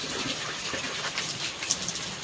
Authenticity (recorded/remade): recorded